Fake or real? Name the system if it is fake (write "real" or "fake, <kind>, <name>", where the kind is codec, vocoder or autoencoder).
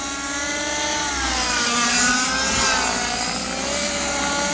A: real